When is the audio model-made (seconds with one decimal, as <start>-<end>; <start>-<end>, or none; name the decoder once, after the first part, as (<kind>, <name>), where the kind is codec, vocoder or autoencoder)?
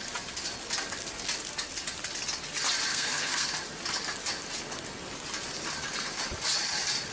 2.9-3.5 (codec, SNAC)